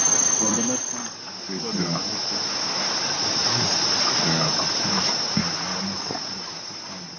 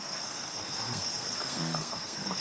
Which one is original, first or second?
first